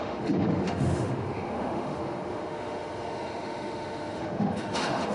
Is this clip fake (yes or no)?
yes